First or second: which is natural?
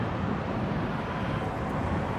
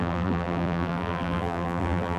first